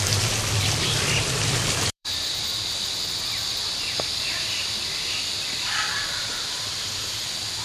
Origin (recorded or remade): remade